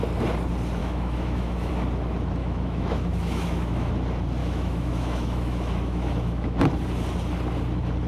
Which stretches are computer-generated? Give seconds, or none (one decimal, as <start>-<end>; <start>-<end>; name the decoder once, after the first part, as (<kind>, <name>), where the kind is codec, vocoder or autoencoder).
0.8-1.7 (autoencoder, DAC-VAE); 2.4-3.9; 4.4-6.6